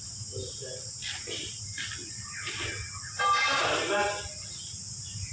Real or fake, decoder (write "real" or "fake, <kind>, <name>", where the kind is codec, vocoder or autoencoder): real